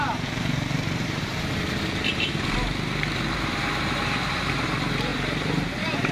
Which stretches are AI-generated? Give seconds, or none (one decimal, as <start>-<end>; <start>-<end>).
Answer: 0.0-1.3; 3.4-6.1